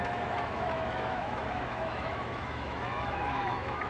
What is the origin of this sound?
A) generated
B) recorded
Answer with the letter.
A